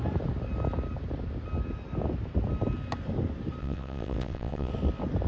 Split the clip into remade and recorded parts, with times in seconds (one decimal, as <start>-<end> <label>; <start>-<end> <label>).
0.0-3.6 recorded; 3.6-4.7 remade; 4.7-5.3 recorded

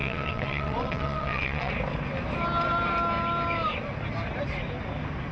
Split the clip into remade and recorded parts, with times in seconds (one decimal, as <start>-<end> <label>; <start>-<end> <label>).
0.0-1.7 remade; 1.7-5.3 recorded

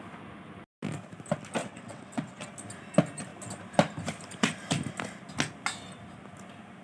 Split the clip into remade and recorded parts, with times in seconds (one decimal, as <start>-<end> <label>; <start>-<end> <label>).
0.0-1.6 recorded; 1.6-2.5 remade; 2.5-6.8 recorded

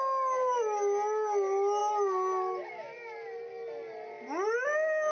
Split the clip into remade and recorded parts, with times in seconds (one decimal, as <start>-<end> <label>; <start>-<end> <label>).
0.0-5.1 recorded

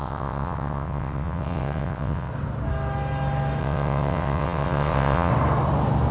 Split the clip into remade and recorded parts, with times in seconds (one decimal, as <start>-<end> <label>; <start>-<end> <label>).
0.0-2.3 remade; 2.3-3.6 recorded; 3.6-5.3 remade; 5.3-6.1 recorded

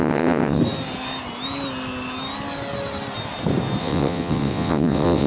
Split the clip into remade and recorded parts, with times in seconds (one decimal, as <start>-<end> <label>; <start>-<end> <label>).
0.0-0.6 remade; 0.6-3.8 recorded; 3.8-5.3 remade

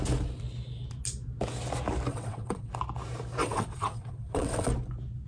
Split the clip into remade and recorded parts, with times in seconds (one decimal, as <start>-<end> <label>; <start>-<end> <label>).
0.0-2.1 recorded; 2.1-2.7 remade; 2.7-3.4 recorded; 3.4-4.7 remade; 4.7-5.3 recorded

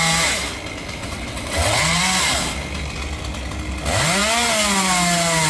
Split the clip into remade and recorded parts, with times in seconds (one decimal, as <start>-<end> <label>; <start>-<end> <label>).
0.0-1.0 recorded; 1.0-2.0 remade; 2.0-5.5 recorded